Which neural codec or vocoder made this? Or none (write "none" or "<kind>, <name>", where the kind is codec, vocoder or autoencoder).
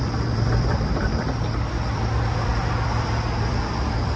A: vocoder, BigVGAN v2